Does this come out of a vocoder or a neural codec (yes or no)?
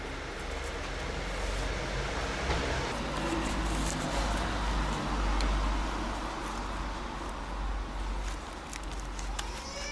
no